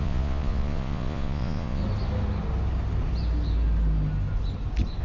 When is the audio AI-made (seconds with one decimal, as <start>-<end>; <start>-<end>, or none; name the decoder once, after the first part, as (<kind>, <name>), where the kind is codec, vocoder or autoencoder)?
0.0-1.8 (vocoder, Vocos)